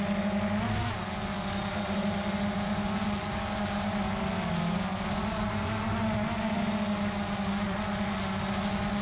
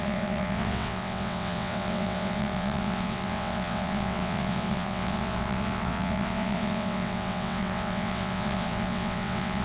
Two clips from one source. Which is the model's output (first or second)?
second